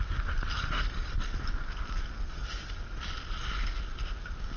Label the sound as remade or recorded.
remade